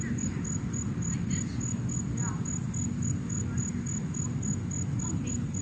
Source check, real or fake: real